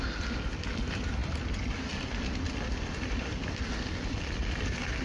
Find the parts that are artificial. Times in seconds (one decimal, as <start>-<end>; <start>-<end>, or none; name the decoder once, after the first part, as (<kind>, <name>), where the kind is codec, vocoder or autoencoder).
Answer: none